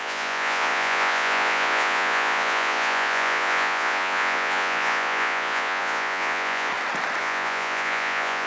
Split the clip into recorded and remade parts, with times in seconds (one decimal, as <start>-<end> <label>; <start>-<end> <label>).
0.0-6.7 remade; 6.7-7.2 recorded; 7.2-8.5 remade